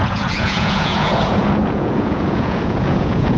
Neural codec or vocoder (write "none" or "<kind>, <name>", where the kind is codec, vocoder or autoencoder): vocoder, Vocos